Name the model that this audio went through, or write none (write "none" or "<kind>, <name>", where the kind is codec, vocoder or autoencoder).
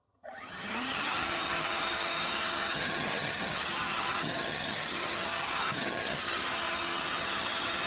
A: vocoder, HiFi-GAN